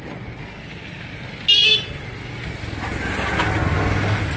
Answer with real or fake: real